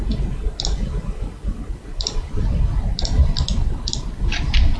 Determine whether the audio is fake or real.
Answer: real